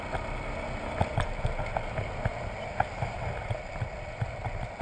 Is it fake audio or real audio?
real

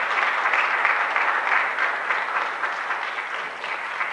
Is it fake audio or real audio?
real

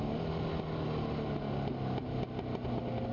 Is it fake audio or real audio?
real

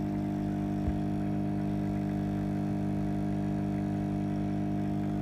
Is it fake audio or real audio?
real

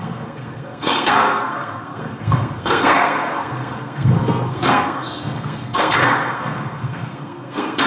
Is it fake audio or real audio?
fake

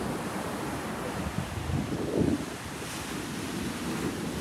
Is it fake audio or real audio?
real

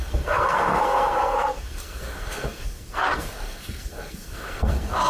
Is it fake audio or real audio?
fake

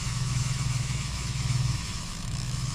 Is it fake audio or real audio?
fake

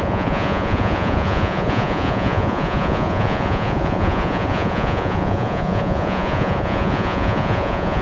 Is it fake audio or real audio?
fake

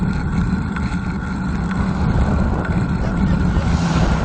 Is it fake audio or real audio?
real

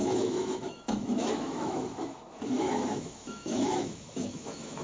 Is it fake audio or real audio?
fake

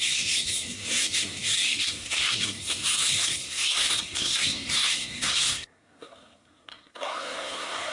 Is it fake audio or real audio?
fake